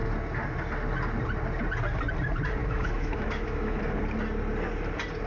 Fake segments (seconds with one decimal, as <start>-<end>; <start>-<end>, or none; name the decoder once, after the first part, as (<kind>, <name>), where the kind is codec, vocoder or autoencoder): 2.6-3.8 (autoencoder, DAC-VAE)